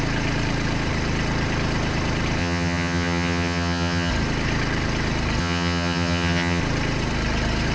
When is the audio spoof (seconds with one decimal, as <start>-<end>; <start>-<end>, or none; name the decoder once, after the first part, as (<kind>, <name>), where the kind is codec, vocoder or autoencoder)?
2.4-4.1 (vocoder, HiFi-GAN); 5.4-6.6